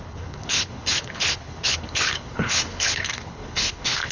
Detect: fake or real fake